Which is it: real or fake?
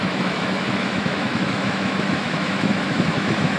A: fake